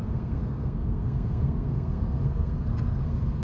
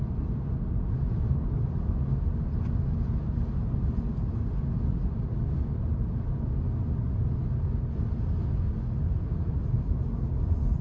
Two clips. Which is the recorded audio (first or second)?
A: second